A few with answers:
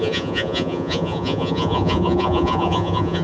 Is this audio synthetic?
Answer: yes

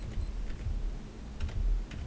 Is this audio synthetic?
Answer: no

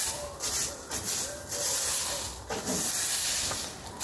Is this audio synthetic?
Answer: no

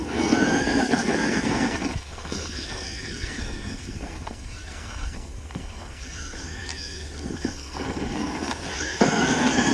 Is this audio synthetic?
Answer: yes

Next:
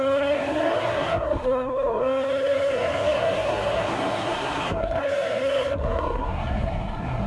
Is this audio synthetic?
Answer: yes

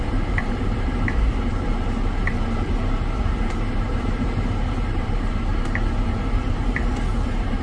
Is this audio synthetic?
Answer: yes